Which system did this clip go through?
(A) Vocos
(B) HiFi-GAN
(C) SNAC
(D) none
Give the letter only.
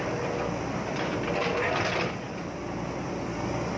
D